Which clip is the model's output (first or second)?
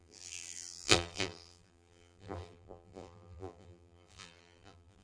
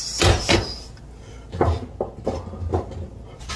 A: first